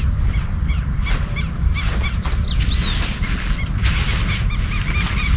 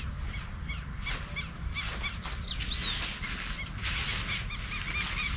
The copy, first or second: first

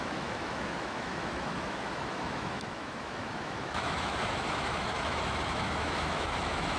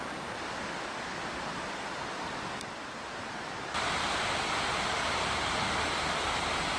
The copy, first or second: first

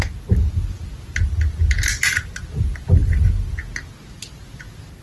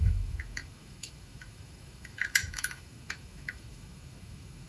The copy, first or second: second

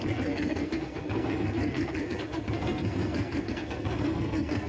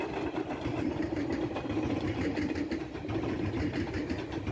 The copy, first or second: first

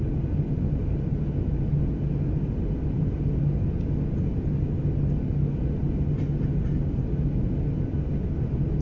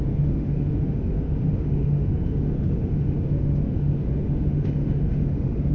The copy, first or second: second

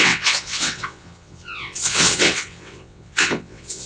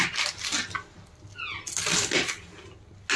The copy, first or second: first